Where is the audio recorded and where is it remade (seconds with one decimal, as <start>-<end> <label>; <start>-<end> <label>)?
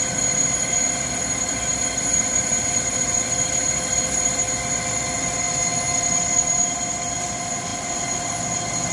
0.0-8.9 recorded